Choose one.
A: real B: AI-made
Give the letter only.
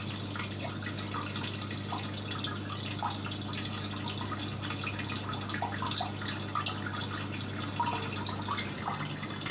A